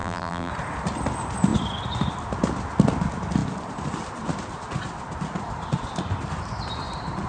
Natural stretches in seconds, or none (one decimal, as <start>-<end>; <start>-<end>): 0.5-7.3